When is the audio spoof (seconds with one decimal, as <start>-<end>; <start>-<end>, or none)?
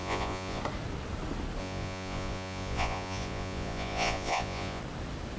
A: 0.0-0.6; 1.6-4.8